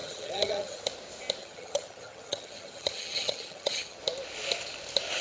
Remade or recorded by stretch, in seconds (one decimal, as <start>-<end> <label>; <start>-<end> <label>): 0.0-0.8 remade; 0.8-1.4 recorded; 1.4-4.0 remade; 4.0-5.2 recorded